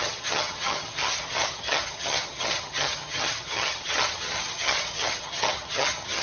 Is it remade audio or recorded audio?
remade